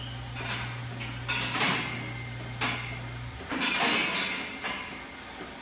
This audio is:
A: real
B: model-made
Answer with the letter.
A